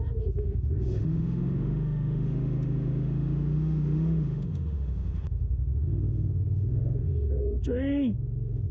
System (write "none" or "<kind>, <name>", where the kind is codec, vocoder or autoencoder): autoencoder, DAC-VAE